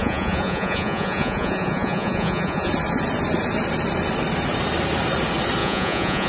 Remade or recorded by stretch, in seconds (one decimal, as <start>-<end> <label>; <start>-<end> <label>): 0.0-2.7 remade; 2.7-5.6 recorded; 5.6-6.3 remade